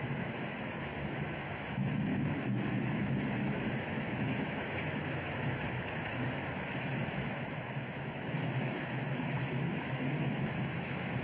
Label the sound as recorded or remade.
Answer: remade